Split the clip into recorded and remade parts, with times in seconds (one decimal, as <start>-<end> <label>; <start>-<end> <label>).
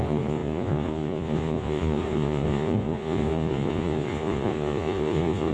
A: 0.0-5.5 remade